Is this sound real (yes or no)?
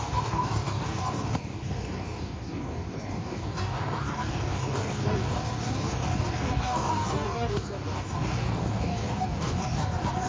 no